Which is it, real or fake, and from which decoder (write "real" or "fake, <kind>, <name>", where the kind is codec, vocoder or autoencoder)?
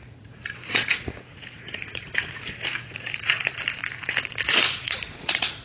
fake, vocoder, Vocos